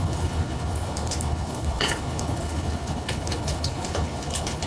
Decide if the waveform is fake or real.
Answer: fake